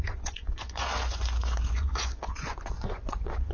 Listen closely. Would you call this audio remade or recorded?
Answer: remade